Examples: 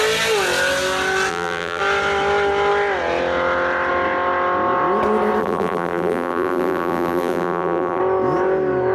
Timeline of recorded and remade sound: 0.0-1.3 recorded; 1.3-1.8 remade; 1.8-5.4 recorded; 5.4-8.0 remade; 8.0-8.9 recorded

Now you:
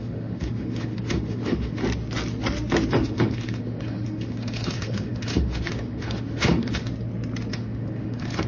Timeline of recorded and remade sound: 0.0-1.8 remade; 1.8-2.9 recorded; 2.9-6.9 remade; 6.9-7.5 recorded; 7.5-8.5 remade

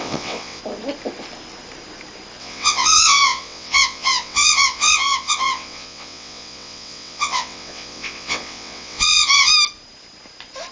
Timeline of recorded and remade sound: 0.0-0.6 remade; 0.6-2.4 recorded; 2.4-9.5 remade; 9.5-10.7 recorded